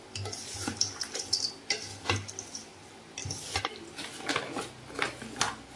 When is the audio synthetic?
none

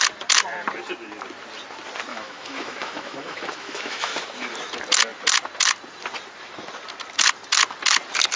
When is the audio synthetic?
2.1-4.5 (autoencoder, DAC-VAE)